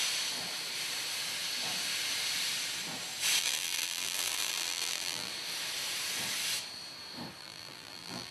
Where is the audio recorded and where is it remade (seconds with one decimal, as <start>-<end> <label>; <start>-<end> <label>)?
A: 0.0-3.4 recorded; 3.4-5.3 remade; 5.3-7.4 recorded; 7.4-8.3 remade